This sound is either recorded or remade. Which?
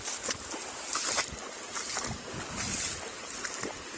recorded